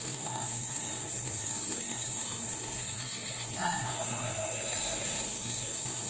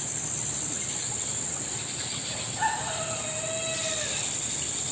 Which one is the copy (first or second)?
first